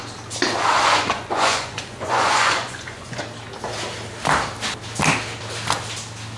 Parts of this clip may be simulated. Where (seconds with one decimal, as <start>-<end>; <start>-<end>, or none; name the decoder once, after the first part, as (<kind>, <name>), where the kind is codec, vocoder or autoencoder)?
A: 0.6-3.2 (vocoder, Vocos)